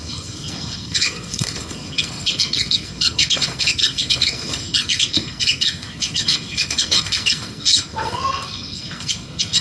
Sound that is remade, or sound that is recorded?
remade